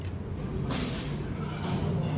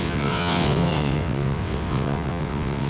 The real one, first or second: first